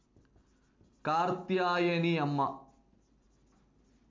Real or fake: real